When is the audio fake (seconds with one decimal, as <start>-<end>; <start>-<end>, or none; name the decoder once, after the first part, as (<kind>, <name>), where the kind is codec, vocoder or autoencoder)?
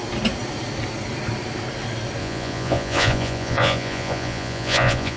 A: 2.2-5.2 (vocoder, Vocos)